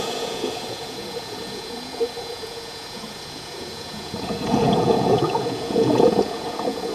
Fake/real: fake